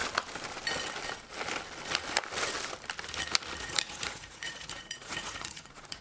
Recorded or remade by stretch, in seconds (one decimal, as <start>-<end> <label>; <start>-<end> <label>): 0.0-3.6 recorded; 3.6-6.0 remade